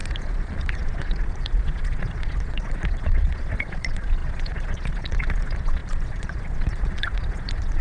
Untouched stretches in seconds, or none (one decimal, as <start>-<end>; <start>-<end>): none